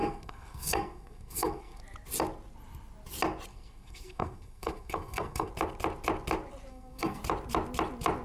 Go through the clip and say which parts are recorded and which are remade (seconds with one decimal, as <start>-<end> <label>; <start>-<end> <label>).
0.0-1.8 remade; 1.8-3.5 recorded; 3.5-5.5 remade; 5.5-6.7 recorded; 6.7-7.2 remade; 7.2-8.2 recorded